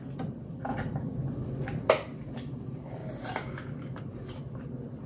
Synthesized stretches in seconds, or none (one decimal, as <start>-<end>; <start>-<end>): 0.0-3.0; 4.0-5.1